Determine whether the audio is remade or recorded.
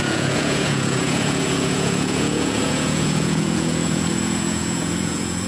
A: remade